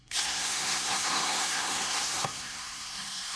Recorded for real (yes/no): no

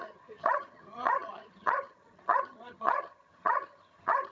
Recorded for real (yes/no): no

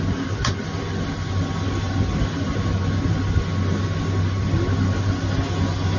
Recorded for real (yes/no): yes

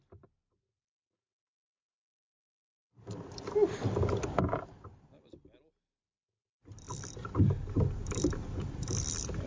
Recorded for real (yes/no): yes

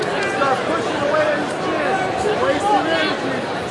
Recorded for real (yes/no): no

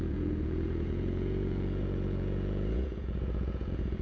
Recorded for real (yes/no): no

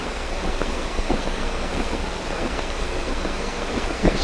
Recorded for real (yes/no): no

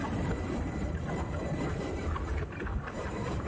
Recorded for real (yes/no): no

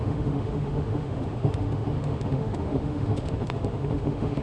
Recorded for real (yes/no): no